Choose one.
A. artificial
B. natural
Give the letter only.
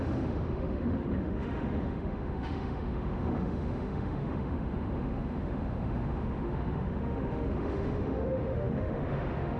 A